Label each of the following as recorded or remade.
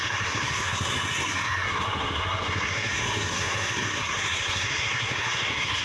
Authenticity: remade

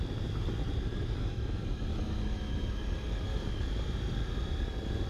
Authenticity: recorded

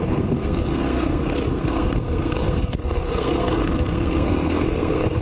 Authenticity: remade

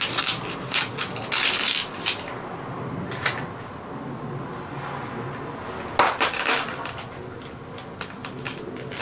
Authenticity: recorded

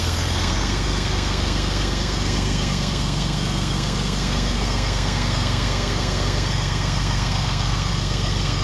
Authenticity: remade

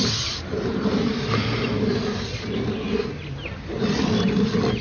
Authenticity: recorded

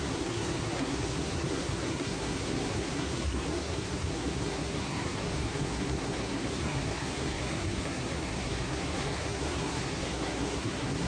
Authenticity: remade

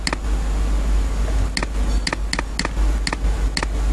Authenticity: recorded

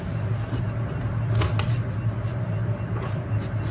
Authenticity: recorded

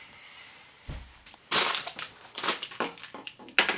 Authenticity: recorded